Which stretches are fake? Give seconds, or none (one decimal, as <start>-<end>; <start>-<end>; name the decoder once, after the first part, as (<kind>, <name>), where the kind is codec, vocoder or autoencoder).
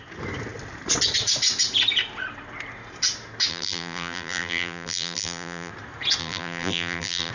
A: 3.5-5.7 (vocoder, BigVGAN v2); 6.2-7.3